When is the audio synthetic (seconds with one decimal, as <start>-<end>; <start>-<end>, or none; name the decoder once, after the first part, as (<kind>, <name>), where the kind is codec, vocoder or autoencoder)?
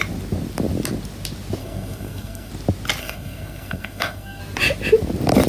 1.6-2.5 (codec, SNAC); 3.0-4.4